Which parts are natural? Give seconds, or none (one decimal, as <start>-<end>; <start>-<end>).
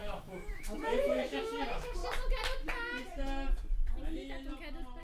2.0-5.0